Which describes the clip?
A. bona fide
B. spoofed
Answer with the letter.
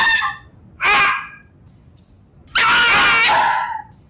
A